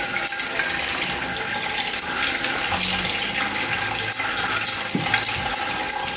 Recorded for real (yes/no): yes